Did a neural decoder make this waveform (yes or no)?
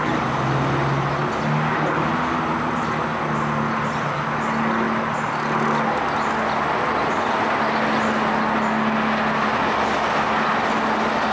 no